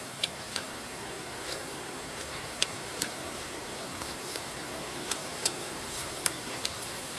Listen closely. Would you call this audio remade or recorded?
remade